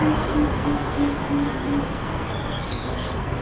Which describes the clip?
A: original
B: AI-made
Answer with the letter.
B